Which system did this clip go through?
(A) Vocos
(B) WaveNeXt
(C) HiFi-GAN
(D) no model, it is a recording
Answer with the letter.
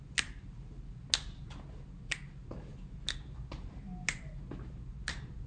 D